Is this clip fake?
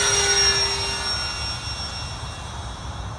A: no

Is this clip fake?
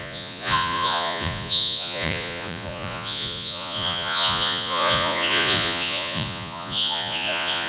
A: yes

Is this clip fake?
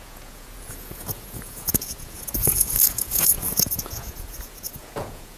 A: yes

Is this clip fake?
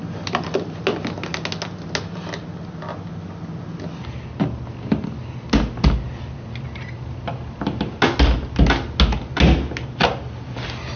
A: no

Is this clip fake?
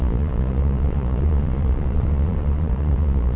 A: yes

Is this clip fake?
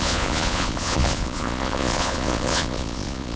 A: yes